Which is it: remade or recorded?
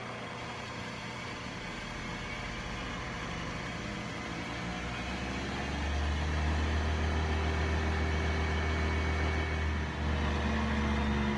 recorded